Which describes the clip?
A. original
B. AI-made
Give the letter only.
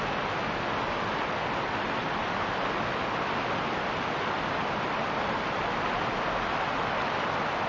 A